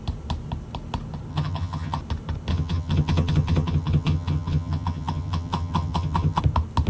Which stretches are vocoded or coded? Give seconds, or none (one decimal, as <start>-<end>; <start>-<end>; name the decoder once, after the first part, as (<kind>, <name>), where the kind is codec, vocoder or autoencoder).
1.3-2.0 (vocoder, HiFi-GAN); 2.5-6.4